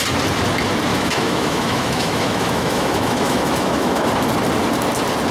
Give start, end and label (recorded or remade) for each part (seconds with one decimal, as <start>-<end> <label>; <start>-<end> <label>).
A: 0.0-0.9 recorded; 0.9-4.1 remade; 4.1-5.3 recorded